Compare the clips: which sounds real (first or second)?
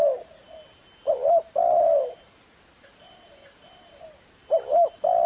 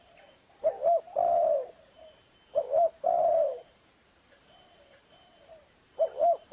first